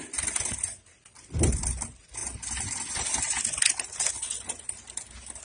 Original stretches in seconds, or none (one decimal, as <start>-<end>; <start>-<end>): 0.0-2.2; 4.1-5.4